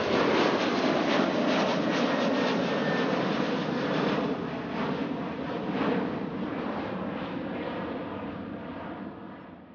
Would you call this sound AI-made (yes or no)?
no